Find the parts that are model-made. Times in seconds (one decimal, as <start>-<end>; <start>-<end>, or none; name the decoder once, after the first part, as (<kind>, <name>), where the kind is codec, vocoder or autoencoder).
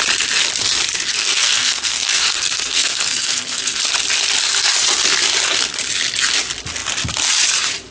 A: 1.1-3.8 (codec, SNAC)